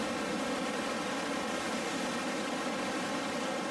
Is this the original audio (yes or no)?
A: yes